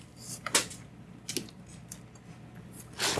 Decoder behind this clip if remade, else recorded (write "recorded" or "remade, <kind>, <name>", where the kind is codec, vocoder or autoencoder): recorded